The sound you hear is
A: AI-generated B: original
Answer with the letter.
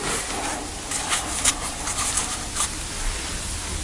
B